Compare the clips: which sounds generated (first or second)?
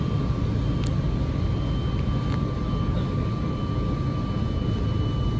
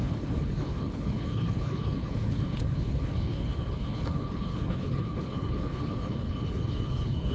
second